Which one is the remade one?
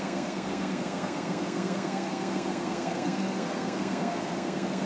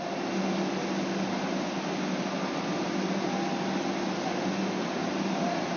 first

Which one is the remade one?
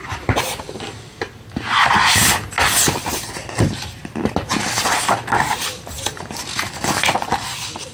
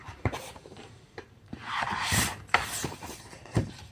second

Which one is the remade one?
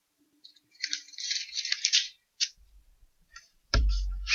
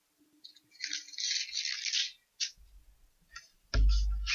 first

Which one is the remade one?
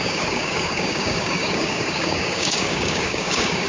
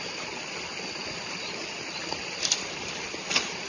first